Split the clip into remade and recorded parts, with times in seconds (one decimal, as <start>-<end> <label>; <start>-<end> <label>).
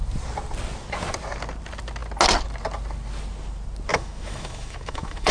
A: 0.0-3.9 recorded; 3.9-5.3 remade